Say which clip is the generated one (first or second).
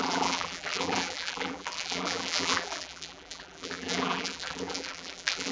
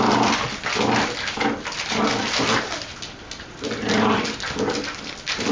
first